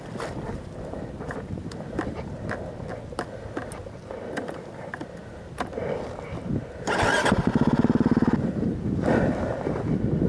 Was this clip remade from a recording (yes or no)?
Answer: no